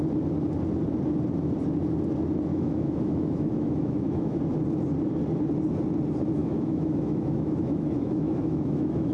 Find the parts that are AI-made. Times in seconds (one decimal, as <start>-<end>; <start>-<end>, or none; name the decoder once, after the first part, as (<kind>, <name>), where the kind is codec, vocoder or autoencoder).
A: 2.5-4.4 (autoencoder, DAC-VAE); 6.4-9.1